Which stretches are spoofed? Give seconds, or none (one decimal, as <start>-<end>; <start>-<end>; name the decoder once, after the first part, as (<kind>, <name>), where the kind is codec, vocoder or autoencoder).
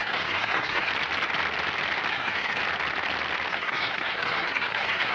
0.0-0.9 (codec, SNAC); 2.1-2.6; 3.5-5.1